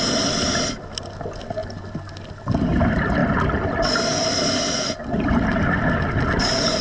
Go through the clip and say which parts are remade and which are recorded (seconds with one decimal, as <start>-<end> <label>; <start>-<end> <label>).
0.0-6.8 recorded